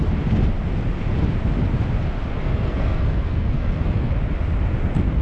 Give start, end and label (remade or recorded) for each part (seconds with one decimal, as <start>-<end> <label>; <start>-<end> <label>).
0.0-2.3 recorded; 2.3-4.1 remade; 4.1-5.2 recorded